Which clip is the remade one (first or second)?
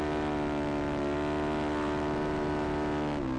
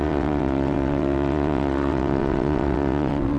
second